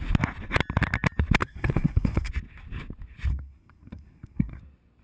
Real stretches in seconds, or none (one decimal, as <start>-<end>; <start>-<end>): 0.0-1.4; 2.3-3.3; 4.6-5.0